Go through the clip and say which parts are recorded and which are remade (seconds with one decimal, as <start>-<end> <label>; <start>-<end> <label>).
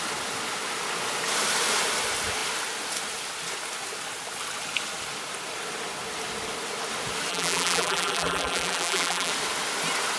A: 0.0-7.3 recorded; 7.3-9.3 remade; 9.3-10.2 recorded